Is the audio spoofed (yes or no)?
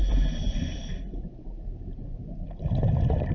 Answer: no